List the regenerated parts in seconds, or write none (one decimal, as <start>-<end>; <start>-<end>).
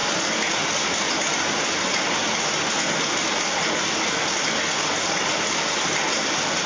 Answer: none